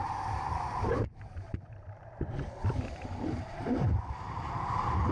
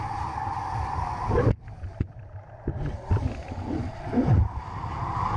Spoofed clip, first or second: first